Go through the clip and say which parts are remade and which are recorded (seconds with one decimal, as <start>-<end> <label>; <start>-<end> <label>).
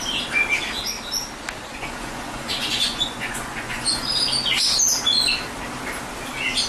0.0-1.6 recorded; 1.6-4.1 remade; 4.1-6.7 recorded